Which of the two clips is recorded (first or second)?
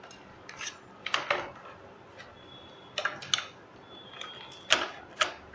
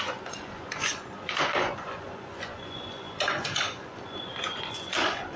first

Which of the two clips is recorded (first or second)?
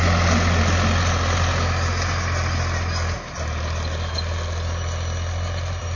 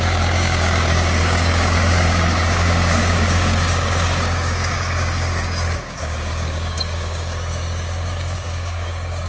first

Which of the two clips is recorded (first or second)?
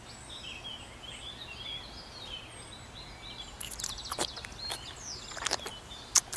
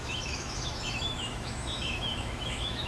first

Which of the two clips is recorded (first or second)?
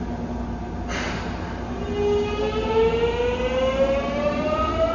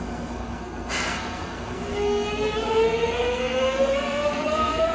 first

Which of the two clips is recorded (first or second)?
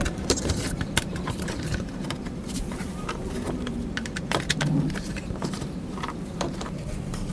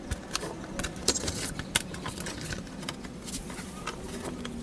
second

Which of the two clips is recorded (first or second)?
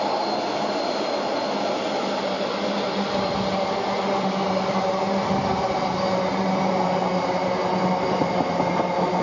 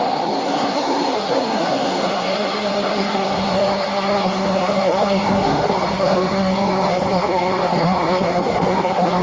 first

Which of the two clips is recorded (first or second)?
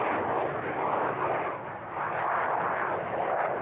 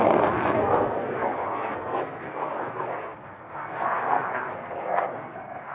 first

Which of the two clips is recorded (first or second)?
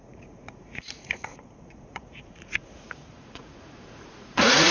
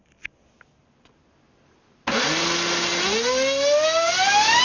second